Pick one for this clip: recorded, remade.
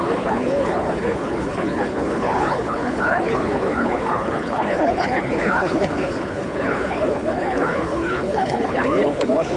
remade